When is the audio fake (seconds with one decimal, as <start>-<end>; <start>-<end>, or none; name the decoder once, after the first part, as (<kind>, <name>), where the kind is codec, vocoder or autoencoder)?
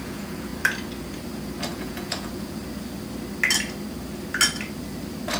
0.0-0.5 (vocoder, Vocos); 1.7-2.6